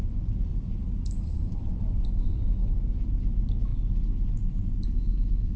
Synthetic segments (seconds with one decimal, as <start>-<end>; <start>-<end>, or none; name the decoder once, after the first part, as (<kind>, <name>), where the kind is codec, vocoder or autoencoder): 0.5-2.7 (vocoder, BigVGAN v2)